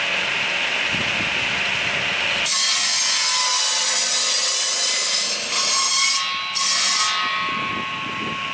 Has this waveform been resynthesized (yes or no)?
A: no